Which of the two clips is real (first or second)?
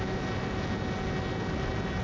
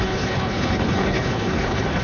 first